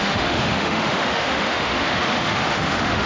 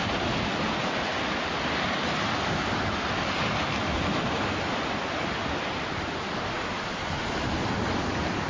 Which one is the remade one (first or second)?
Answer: first